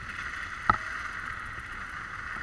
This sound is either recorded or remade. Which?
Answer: recorded